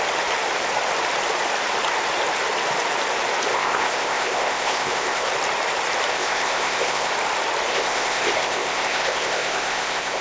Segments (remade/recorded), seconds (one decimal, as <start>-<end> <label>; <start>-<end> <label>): 0.0-3.5 recorded; 3.5-5.3 remade; 5.3-6.1 recorded; 6.1-7.1 remade; 7.1-7.7 recorded; 7.7-10.2 remade